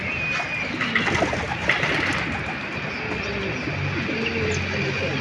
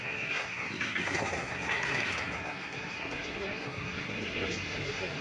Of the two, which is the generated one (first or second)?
second